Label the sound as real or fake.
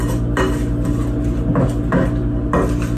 real